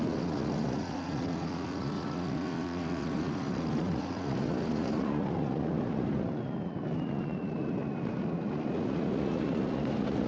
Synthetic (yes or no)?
yes